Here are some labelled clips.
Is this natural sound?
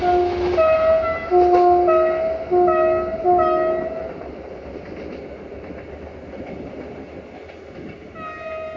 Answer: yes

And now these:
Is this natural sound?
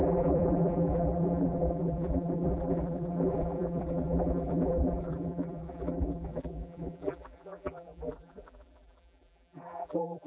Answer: no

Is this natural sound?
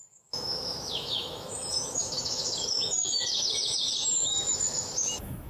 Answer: no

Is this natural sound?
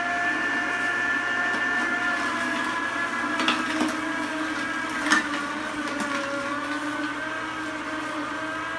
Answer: yes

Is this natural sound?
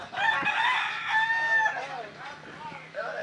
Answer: yes